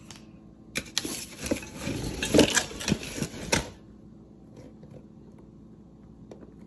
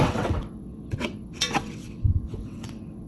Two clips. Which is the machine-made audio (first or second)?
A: second